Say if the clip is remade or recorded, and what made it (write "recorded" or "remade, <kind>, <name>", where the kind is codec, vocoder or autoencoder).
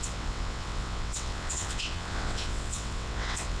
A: remade, vocoder, WaveNeXt